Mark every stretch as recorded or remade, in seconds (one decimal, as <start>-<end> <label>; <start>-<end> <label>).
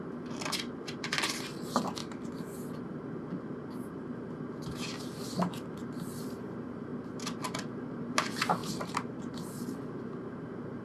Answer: 0.0-8.6 recorded; 8.6-9.2 remade; 9.2-10.8 recorded